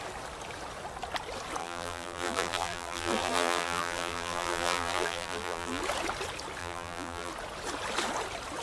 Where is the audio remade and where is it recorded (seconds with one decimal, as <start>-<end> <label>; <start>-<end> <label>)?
0.0-1.6 recorded; 1.6-5.8 remade; 5.8-6.6 recorded; 6.6-7.3 remade; 7.3-8.6 recorded